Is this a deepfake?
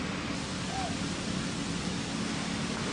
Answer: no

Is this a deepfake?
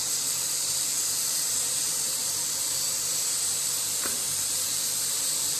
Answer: yes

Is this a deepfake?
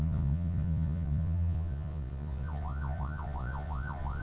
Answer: yes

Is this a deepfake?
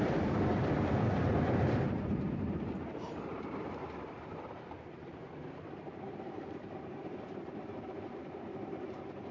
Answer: yes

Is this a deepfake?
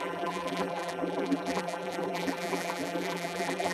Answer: yes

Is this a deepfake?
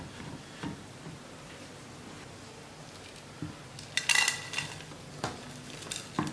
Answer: no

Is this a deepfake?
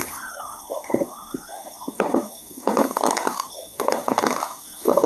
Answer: yes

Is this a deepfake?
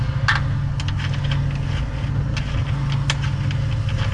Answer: no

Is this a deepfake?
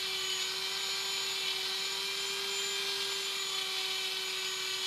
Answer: no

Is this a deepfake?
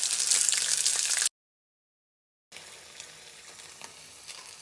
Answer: no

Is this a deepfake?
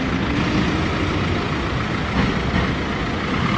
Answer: no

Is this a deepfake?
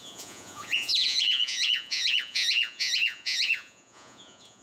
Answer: yes